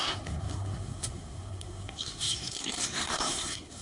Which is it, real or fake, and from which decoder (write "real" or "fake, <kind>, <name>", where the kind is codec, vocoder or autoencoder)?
fake, codec, SNAC